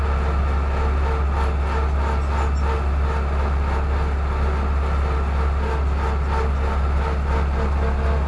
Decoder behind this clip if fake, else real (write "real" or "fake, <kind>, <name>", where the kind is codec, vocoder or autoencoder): real